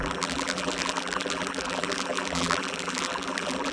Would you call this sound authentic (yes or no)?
no